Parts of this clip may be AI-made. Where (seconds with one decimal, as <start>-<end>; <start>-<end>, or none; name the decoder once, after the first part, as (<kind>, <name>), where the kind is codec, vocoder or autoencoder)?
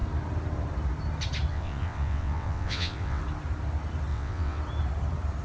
1.5-3.2 (vocoder, WaveNeXt); 4.1-4.6